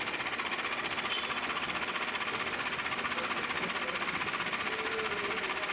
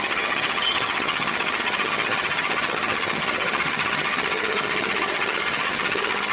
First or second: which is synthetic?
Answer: second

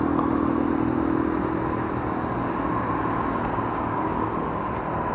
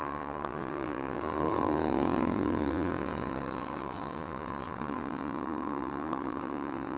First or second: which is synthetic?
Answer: second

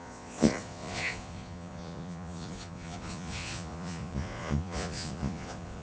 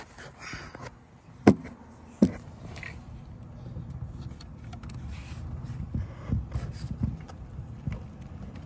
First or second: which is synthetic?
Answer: first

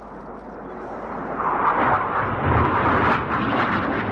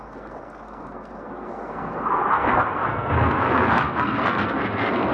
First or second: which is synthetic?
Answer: second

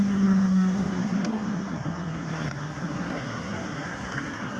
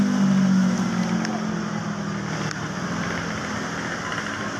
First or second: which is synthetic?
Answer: first